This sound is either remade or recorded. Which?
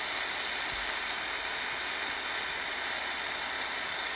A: recorded